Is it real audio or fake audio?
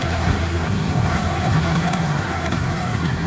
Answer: fake